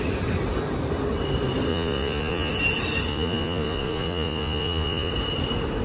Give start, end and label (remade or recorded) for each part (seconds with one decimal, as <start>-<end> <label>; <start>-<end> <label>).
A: 0.0-1.7 recorded; 1.7-2.5 remade; 2.5-3.1 recorded; 3.1-5.1 remade; 5.1-5.8 recorded